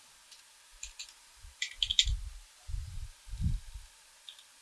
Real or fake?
real